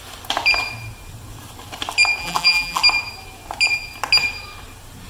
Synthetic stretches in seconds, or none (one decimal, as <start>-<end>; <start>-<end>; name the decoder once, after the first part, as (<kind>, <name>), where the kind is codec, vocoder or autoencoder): 2.2-2.8 (vocoder, BigVGAN v2)